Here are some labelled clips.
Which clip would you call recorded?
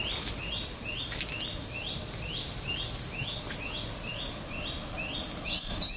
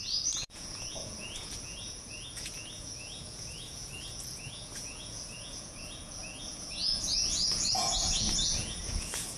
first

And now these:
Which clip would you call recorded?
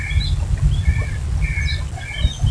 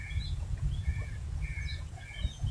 first